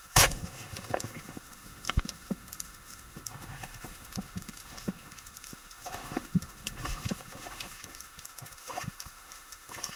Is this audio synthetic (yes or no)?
yes